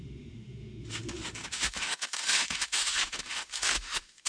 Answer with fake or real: fake